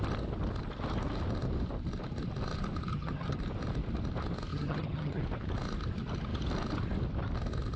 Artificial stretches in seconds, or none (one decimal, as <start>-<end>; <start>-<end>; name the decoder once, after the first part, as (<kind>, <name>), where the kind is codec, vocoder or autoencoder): 2.9-3.4 (vocoder, HiFi-GAN); 4.5-5.2